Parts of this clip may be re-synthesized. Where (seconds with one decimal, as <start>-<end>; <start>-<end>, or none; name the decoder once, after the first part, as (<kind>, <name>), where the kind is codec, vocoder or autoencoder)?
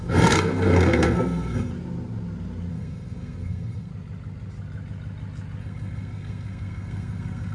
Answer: 0.0-1.7 (codec, SNAC); 2.7-3.9; 5.6-7.5